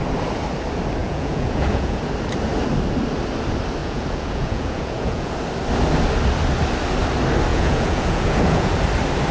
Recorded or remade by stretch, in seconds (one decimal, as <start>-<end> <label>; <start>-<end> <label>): 0.0-1.0 recorded; 1.0-2.0 remade; 2.0-3.8 recorded; 3.8-5.3 remade; 5.3-7.5 recorded; 7.5-8.7 remade; 8.7-9.3 recorded